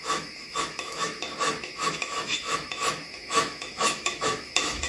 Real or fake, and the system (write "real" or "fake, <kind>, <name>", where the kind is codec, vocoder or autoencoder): fake, autoencoder, DAC-VAE